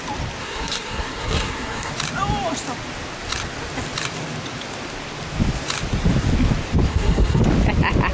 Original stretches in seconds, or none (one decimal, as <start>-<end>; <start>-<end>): 0.0-0.4; 1.9-6.9; 7.4-8.1